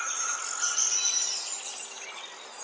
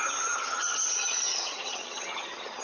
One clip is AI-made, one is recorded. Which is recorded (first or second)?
first